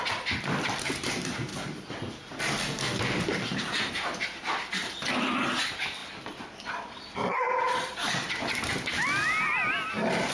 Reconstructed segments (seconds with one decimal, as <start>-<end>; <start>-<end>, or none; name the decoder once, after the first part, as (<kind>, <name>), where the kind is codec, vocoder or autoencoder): 0.0-1.5 (vocoder, BigVGAN v2); 3.9-4.8; 5.6-10.3

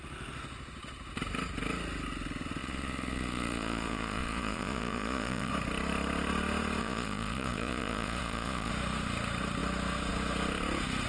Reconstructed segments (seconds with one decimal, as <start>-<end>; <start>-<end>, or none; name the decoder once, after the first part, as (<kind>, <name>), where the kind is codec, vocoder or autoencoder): 2.6-5.5 (vocoder, Vocos); 6.8-8.7

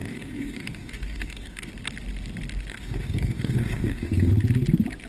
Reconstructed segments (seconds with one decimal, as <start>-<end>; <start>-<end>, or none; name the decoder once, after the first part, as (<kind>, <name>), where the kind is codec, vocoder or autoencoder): 0.0-1.7 (codec, DAC); 2.7-4.3

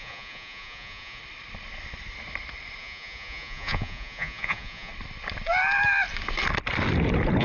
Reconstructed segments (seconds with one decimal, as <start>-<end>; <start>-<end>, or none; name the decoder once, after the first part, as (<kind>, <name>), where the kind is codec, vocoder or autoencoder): 0.0-1.2 (vocoder, Vocos); 2.8-4.9

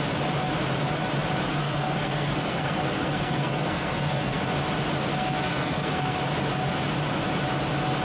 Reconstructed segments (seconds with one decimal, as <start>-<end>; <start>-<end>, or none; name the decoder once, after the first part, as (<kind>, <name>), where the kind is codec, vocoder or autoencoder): 1.6-4.4 (codec, SNAC); 5.1-6.2